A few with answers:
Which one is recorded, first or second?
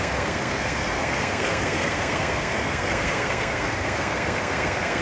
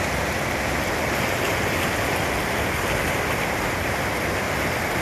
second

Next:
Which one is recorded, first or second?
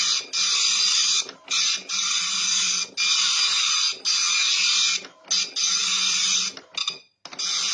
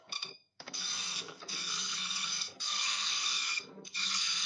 first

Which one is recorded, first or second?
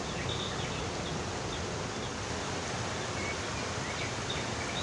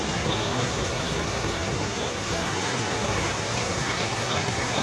first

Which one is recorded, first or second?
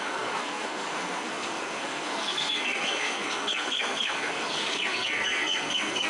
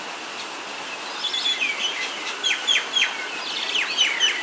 second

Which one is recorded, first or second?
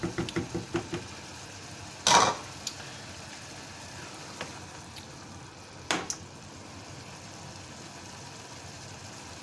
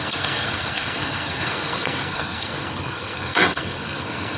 first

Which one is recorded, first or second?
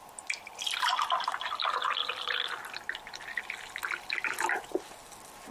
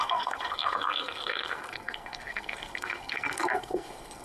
first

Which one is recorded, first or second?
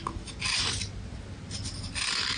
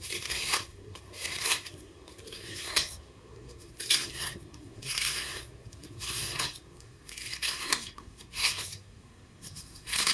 first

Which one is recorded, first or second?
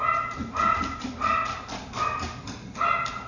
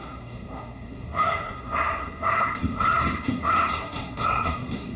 first